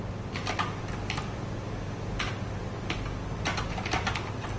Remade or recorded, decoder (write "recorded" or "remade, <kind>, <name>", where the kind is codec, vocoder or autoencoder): recorded